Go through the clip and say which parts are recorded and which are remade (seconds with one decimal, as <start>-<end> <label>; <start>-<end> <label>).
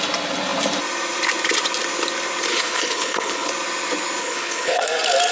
0.0-2.5 recorded; 2.5-3.5 remade; 3.5-4.2 recorded; 4.2-4.8 remade; 4.8-5.3 recorded